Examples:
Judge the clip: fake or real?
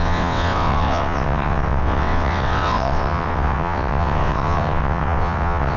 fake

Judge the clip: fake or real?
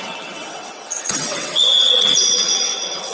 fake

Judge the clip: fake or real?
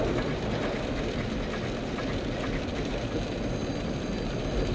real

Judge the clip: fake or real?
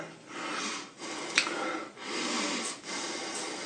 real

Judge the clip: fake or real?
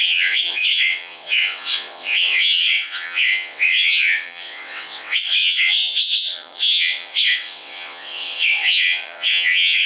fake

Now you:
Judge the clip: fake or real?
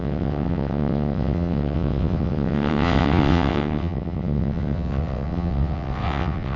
fake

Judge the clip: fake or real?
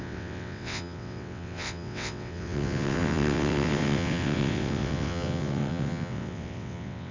fake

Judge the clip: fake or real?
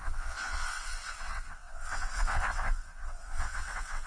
fake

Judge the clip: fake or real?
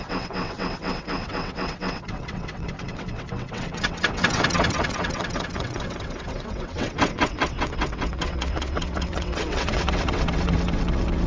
fake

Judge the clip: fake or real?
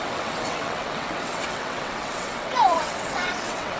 fake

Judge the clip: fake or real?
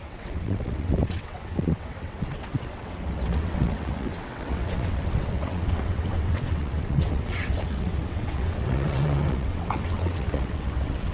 fake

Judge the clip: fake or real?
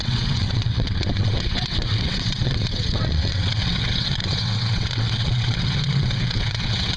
fake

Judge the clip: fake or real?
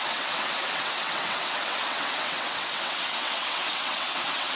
fake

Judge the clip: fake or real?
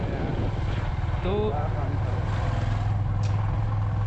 real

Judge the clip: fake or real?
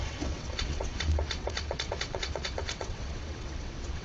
fake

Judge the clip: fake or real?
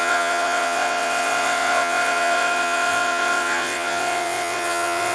fake